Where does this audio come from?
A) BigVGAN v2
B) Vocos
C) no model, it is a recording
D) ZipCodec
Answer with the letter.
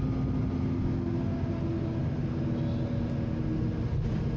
C